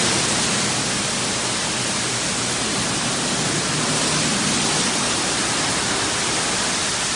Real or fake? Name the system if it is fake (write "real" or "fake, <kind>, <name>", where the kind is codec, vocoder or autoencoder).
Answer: real